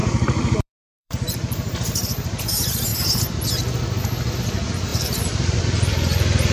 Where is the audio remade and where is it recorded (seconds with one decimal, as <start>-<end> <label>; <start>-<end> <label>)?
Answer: 0.0-2.4 remade; 2.4-4.9 recorded; 4.9-5.6 remade; 5.6-6.5 recorded